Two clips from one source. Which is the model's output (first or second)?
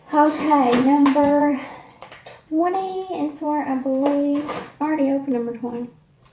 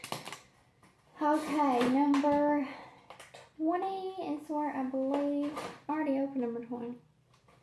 first